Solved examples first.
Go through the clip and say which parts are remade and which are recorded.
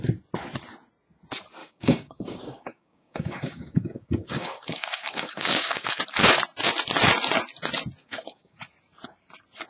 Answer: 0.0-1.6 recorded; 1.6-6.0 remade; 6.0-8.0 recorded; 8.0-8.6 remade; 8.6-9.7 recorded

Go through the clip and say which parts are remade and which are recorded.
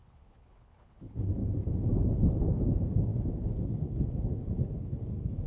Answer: 0.0-1.4 remade; 1.4-2.1 recorded; 2.1-5.5 remade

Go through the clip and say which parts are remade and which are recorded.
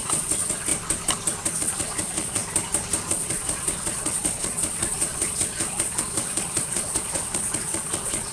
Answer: 0.0-0.7 remade; 0.7-1.5 recorded; 1.5-2.4 remade; 2.4-3.1 recorded; 3.1-8.3 remade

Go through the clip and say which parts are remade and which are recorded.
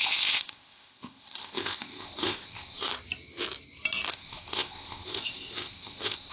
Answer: 0.0-2.9 remade; 2.9-4.1 recorded; 4.1-6.3 remade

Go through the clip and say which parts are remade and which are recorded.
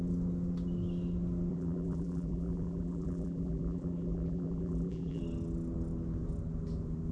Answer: 0.0-1.5 recorded; 1.5-5.2 remade; 5.2-7.1 recorded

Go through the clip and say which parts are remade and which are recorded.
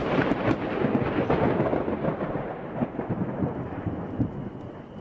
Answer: 0.0-5.0 recorded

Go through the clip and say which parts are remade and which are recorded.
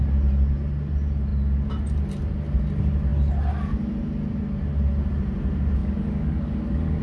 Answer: 0.0-5.8 recorded; 5.8-7.0 remade